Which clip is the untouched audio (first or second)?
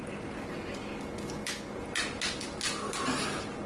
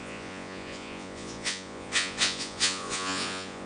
first